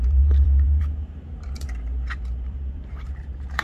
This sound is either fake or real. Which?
fake